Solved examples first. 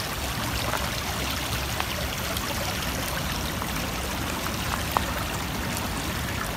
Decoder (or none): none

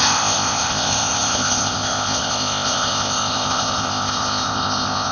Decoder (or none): codec, ZipCodec